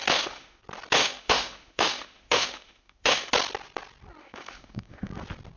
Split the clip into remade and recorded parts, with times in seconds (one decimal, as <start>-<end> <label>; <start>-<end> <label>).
0.0-0.6 remade; 0.6-1.0 recorded; 1.0-3.3 remade; 3.3-4.2 recorded; 4.2-5.1 remade; 5.1-5.6 recorded